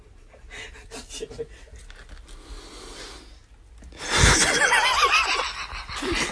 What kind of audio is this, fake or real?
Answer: real